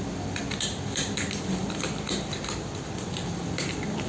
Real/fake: fake